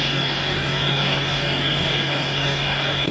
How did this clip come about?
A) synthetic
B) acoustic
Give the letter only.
A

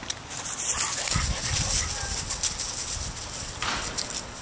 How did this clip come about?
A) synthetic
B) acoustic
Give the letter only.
B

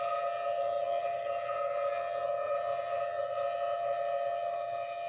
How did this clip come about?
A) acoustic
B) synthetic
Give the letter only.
B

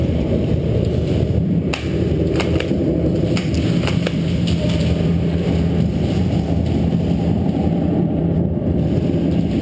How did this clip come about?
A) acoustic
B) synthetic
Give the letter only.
B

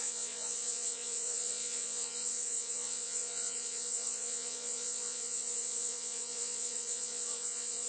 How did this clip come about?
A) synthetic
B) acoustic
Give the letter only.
A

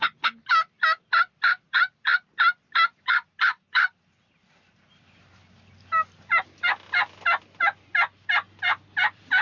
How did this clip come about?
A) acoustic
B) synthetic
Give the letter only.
A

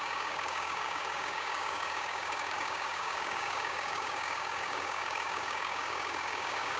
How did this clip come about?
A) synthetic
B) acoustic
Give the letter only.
A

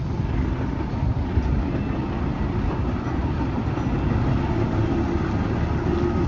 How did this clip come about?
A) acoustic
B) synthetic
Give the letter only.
A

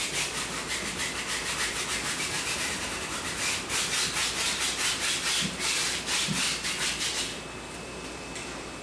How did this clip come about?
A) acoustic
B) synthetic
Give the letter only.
A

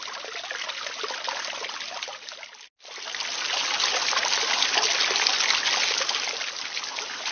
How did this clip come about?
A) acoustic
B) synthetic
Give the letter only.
A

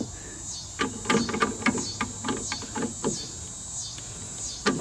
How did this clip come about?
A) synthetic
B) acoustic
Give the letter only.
B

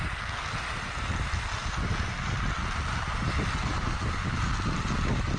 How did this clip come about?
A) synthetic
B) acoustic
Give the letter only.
B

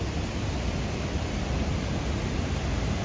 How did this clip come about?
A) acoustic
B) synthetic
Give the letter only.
A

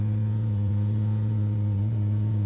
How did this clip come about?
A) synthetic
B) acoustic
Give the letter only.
A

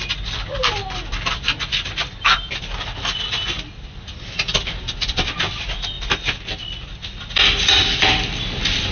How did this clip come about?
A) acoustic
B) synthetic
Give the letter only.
A